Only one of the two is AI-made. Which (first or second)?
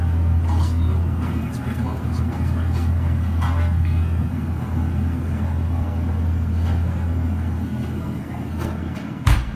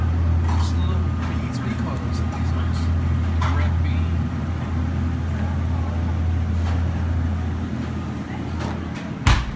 first